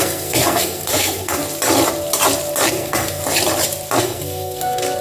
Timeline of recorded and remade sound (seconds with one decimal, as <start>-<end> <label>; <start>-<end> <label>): 0.0-1.4 remade; 1.4-2.7 recorded; 2.7-3.2 remade; 3.2-4.0 recorded; 4.0-5.0 remade